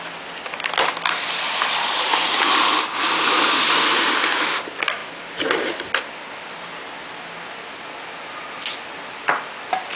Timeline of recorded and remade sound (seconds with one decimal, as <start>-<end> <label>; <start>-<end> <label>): 0.0-9.9 recorded